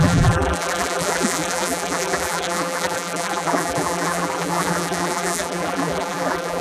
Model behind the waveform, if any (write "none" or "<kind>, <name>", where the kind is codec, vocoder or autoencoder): vocoder, BigVGAN v2